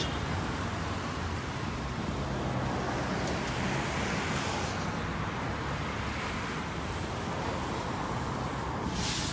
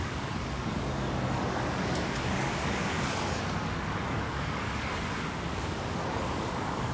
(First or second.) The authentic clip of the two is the first